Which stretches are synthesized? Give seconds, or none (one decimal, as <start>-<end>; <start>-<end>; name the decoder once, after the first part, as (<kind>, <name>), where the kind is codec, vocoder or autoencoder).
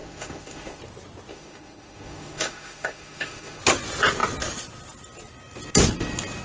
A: 0.0-0.8 (autoencoder, DAC-VAE); 1.3-3.6